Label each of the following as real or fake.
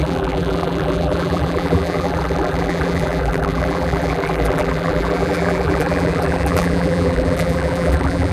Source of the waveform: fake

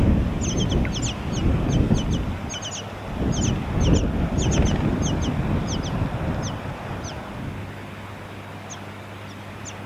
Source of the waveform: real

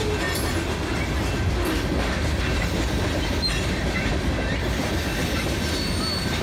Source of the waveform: real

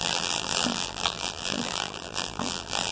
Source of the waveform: fake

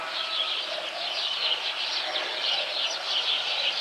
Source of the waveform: real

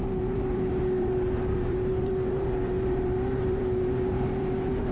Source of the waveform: fake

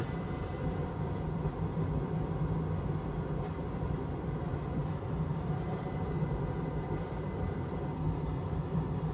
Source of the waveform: fake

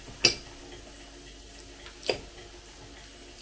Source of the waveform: real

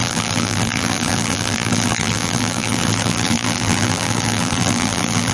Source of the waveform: fake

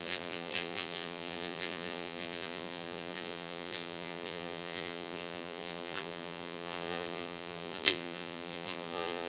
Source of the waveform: fake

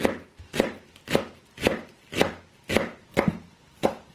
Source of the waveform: fake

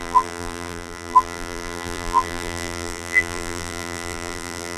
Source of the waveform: fake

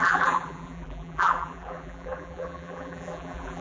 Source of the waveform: fake